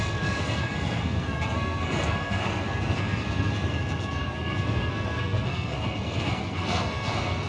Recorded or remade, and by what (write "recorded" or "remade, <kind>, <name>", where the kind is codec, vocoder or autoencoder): remade, codec, SNAC